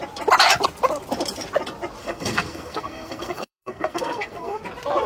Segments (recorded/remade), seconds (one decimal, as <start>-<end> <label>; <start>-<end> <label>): 0.0-2.0 recorded; 2.0-4.6 remade; 4.6-5.1 recorded